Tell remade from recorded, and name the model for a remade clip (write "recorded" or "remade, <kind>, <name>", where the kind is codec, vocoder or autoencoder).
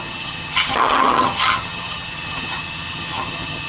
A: remade, vocoder, HiFi-GAN